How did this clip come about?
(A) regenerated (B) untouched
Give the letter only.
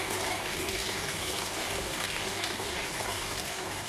A